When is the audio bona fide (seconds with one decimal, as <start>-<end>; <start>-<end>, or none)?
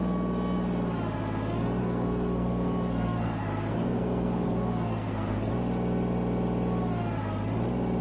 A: 0.0-1.8; 5.5-8.0